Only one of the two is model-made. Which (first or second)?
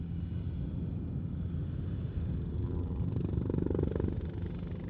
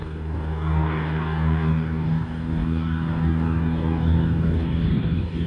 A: second